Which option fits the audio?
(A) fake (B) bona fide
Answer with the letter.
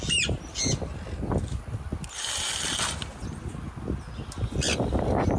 B